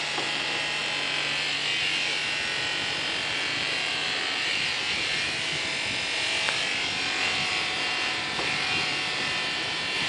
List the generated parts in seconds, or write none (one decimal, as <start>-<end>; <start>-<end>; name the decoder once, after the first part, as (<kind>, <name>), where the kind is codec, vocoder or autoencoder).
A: 0.0-0.8 (vocoder, BigVGAN v2); 3.3-5.7; 7.5-10.1